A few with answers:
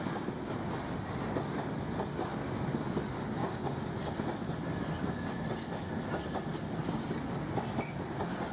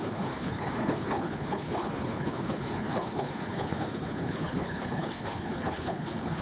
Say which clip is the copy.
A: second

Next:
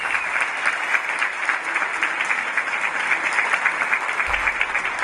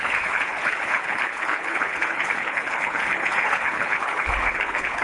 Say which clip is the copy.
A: second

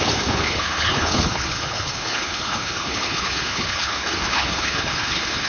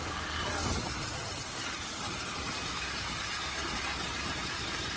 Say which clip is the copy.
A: first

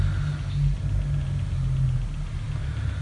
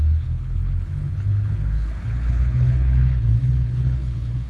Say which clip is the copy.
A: second